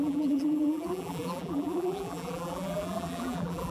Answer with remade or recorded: remade